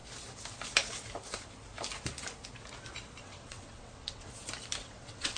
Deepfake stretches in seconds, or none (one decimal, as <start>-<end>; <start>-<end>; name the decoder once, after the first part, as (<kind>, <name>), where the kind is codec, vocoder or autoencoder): 3.2-4.3 (vocoder, WaveNeXt); 4.8-5.4